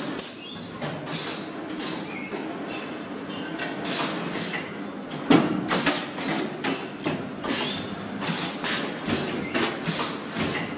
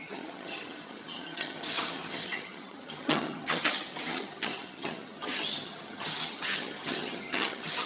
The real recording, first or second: first